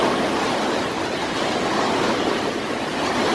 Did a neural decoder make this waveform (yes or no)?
no